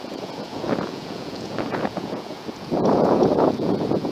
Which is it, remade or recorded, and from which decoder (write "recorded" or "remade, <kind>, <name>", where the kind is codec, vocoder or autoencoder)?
remade, vocoder, Vocos